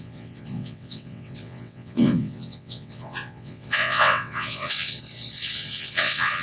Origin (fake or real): fake